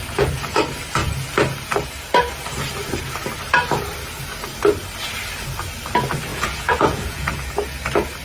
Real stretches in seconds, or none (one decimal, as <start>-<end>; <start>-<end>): 0.6-6.3; 7.5-8.2